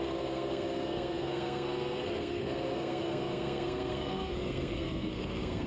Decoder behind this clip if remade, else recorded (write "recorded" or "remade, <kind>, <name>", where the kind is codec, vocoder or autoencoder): remade, codec, SNAC